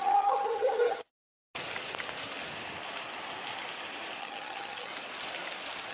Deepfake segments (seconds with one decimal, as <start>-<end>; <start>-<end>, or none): 0.0-1.1; 4.2-4.9